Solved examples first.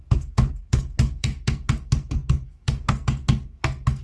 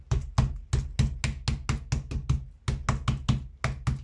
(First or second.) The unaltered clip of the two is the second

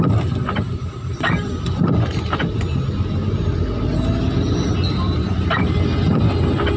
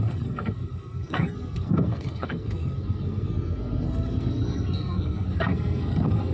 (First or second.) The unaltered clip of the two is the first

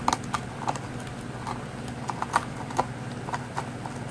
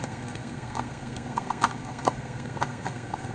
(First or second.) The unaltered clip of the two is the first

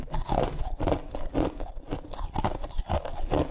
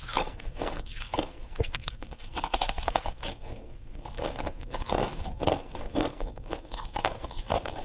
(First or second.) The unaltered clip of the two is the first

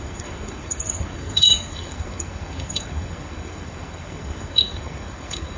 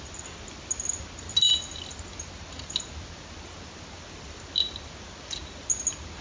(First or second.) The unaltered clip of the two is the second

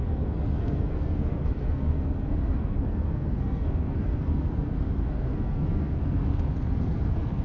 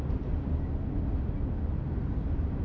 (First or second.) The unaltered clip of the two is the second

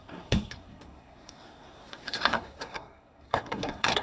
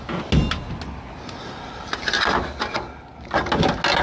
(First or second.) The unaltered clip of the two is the second